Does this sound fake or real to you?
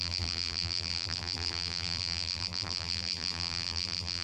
fake